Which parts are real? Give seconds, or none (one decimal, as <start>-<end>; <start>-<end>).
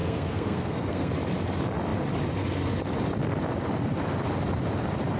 1.1-5.2